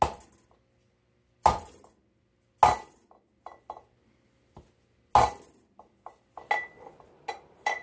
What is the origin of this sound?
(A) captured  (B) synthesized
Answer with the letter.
A